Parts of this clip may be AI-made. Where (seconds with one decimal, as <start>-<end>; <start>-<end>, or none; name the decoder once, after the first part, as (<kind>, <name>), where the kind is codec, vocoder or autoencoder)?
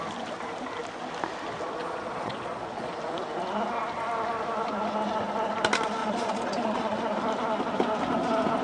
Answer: 1.8-2.9 (vocoder, Vocos); 6.0-7.0